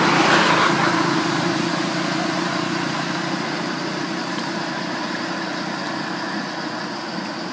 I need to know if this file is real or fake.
real